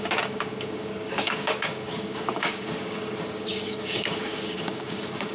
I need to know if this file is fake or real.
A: fake